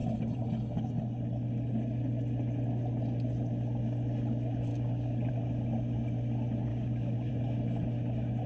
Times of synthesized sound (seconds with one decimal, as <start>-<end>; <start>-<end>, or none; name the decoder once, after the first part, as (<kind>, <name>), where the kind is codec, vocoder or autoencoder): 4.7-5.3 (codec, DAC); 6.7-7.3